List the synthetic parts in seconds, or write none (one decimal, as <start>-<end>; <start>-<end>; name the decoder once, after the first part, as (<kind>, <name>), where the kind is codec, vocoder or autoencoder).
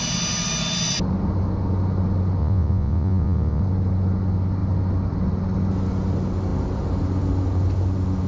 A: 2.4-3.6 (vocoder, Vocos)